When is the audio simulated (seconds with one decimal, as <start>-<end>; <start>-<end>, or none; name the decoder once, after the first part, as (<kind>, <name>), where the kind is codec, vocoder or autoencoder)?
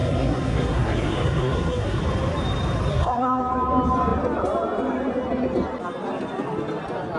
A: 0.0-2.0 (codec, SNAC); 2.9-3.4